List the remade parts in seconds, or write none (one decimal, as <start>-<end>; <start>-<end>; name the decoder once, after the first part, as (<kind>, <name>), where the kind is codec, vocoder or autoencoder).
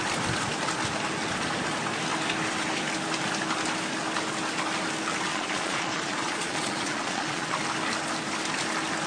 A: 5.3-7.6 (vocoder, Vocos)